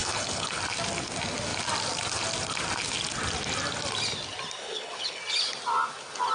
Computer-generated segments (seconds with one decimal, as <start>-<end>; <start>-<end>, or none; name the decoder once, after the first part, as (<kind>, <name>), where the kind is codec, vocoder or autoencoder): 0.0-0.6 (codec, HILCodec); 4.6-5.2

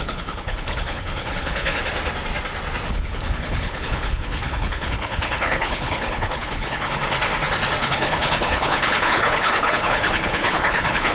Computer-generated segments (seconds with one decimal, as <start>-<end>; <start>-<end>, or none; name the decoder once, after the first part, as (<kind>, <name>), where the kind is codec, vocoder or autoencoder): 0.0-1.8 (codec, HILCodec); 2.9-7.0; 7.8-11.1

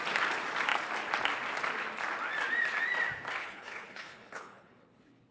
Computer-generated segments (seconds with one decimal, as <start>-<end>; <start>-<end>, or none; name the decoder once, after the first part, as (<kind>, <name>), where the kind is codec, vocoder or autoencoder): 3.4-5.3 (codec, HILCodec)

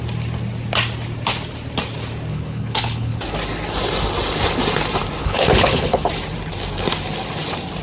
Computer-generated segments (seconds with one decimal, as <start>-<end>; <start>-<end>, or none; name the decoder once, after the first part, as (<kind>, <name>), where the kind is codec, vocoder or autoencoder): 2.3-3.2 (codec, HILCodec); 5.2-6.1

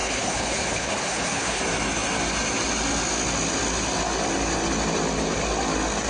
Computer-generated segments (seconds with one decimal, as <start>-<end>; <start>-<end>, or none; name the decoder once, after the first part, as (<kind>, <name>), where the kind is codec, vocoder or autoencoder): 0.0-1.6 (codec, HILCodec)

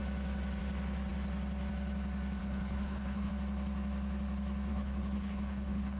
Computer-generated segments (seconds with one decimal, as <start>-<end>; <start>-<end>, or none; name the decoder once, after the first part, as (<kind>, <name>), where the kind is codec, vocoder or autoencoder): 2.4-3.3 (codec, HILCodec); 4.7-6.0

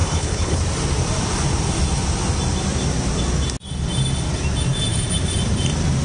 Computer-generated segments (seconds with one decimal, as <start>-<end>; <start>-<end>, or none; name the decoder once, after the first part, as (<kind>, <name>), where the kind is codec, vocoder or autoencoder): 0.0-0.6 (codec, HILCodec)